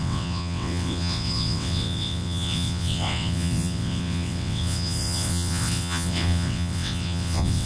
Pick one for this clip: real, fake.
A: fake